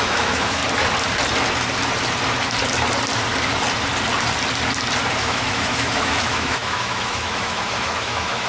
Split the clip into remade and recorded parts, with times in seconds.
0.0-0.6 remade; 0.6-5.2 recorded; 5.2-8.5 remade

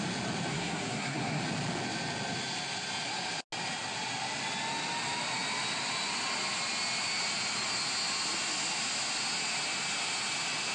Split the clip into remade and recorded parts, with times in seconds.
0.0-0.5 recorded; 0.5-1.4 remade; 1.4-10.7 recorded